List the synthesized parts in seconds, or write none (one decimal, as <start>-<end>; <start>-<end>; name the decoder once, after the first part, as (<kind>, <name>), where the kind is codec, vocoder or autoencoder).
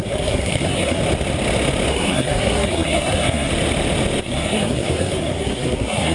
0.0-1.0 (codec, SNAC); 1.9-3.5; 4.2-6.1